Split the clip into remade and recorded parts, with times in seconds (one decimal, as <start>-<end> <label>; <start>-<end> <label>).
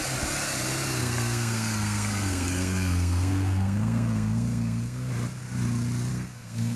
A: 0.0-1.0 recorded; 1.0-5.1 remade; 5.1-6.1 recorded; 6.1-6.8 remade